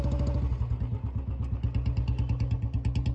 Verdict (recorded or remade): recorded